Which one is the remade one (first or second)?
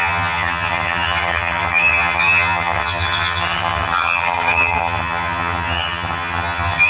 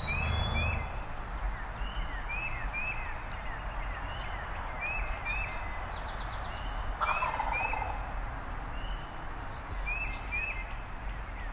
first